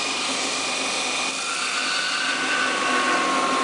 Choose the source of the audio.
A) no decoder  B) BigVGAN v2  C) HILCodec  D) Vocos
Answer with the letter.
A